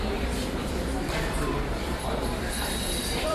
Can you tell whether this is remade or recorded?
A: remade